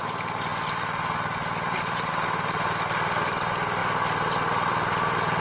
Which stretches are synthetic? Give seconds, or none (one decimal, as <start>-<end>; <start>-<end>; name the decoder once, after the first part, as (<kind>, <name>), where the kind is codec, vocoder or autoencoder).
0.0-0.5 (vocoder, BigVGAN v2); 2.1-3.8